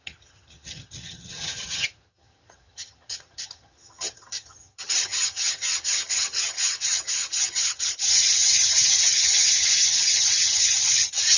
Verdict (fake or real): fake